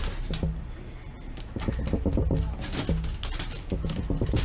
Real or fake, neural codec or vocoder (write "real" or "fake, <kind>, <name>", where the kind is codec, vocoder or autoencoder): real